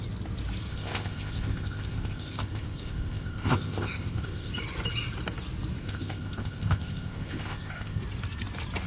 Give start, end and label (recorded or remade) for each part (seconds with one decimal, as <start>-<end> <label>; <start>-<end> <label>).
0.0-0.7 recorded; 0.7-4.5 remade; 4.5-5.8 recorded; 5.8-8.0 remade; 8.0-8.9 recorded